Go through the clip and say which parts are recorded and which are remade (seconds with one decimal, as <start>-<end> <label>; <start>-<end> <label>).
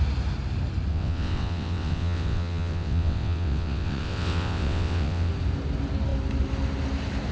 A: 0.0-0.9 recorded; 0.9-5.3 remade; 5.3-7.3 recorded